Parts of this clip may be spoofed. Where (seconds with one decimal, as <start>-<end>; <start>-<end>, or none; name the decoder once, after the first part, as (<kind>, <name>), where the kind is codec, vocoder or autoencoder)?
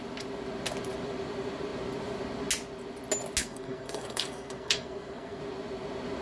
3.4-5.4 (codec, SNAC)